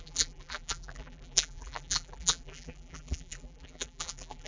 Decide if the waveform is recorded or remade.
remade